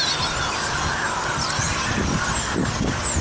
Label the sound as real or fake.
real